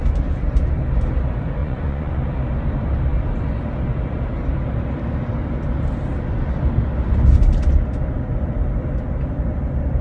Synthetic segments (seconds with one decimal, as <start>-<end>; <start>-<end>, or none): 1.6-2.2